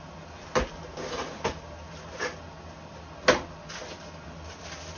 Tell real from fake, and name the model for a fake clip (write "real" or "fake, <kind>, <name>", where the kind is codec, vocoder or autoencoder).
real